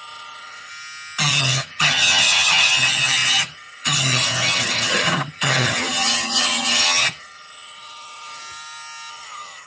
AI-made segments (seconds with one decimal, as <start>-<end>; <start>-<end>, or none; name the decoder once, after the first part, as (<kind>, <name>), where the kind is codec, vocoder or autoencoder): 0.0-0.7 (vocoder, HiFi-GAN); 1.3-8.4; 9.1-9.7